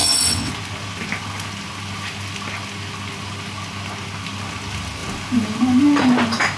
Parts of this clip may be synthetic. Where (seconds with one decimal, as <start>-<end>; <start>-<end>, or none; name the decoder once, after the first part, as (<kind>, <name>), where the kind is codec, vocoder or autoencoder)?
0.0-0.5 (vocoder, WaveNeXt)